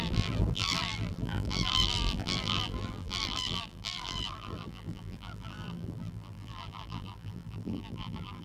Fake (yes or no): yes